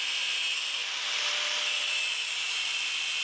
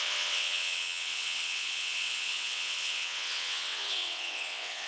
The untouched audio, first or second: first